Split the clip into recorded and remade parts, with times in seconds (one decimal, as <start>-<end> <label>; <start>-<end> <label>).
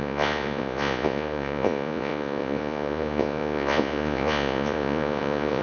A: 0.0-5.6 remade